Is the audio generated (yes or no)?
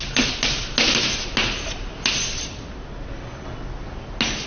no